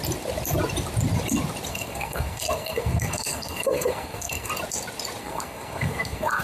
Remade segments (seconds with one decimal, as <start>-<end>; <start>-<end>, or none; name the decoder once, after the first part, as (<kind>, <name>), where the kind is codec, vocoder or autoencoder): 1.7-4.5 (codec, SNAC); 5.2-6.4